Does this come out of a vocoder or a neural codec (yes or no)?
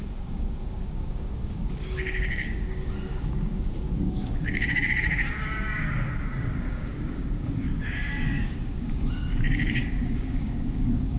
yes